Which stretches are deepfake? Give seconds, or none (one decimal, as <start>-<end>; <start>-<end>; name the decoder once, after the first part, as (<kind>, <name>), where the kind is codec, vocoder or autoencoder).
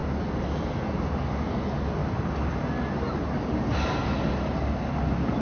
none